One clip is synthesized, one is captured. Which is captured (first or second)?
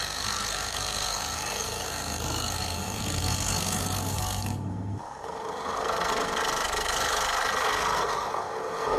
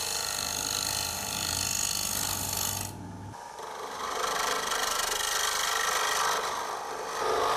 second